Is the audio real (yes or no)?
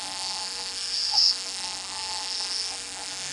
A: no